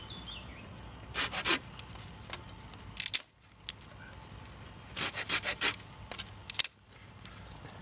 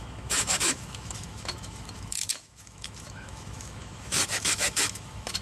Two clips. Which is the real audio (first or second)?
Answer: first